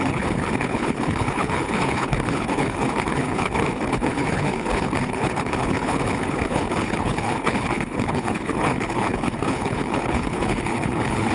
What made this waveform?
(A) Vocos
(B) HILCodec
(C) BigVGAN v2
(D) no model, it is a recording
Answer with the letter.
B